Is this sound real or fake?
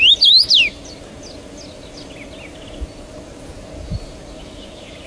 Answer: real